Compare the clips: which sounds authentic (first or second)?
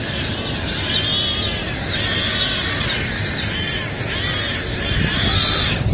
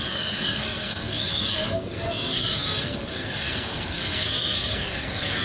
first